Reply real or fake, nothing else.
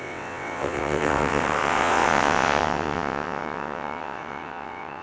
fake